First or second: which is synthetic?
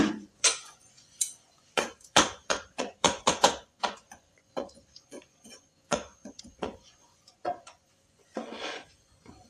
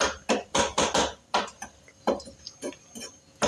first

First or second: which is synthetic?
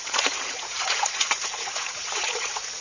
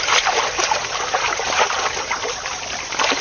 first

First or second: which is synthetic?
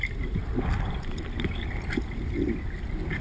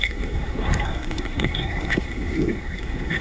second